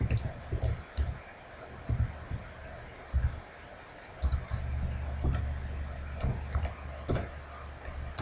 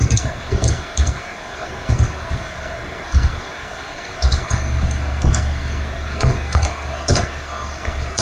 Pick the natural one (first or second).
first